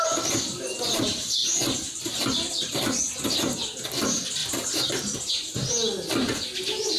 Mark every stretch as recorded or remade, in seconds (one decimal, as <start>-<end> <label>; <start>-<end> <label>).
0.0-7.0 recorded